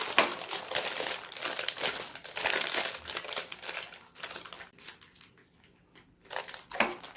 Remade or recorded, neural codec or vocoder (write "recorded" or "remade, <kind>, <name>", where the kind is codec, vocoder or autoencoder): recorded